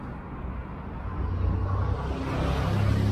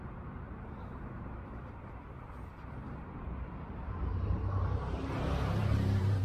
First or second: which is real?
first